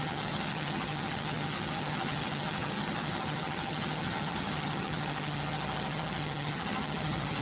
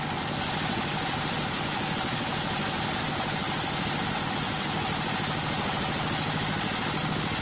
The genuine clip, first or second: second